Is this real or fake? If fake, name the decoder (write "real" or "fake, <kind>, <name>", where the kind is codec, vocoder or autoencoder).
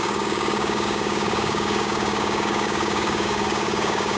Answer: fake, codec, DAC